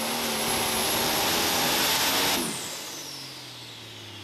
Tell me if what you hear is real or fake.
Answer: real